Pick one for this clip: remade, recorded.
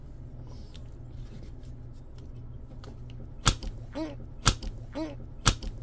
recorded